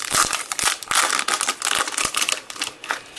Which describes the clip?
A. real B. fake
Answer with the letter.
A